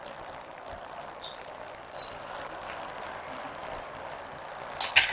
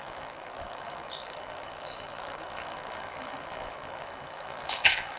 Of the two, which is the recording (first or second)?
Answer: first